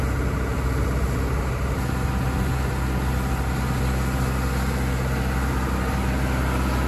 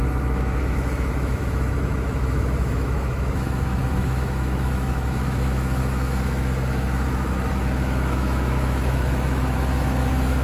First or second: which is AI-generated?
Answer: second